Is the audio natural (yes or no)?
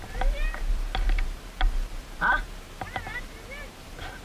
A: no